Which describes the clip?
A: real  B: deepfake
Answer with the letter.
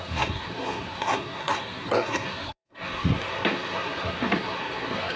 B